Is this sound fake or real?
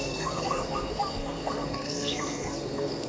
fake